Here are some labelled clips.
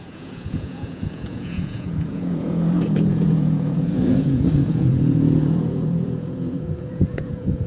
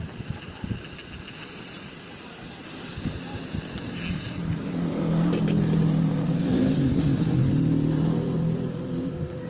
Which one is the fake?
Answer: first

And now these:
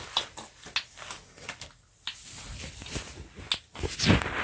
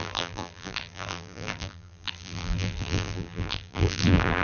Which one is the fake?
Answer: second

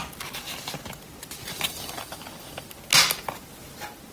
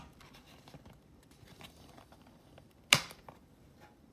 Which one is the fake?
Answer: second